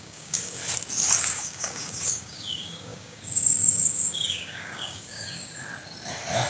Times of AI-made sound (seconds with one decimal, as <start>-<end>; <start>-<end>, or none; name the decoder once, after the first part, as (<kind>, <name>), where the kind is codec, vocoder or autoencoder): 0.0-0.6 (codec, DAC); 1.2-5.5